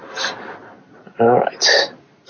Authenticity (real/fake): real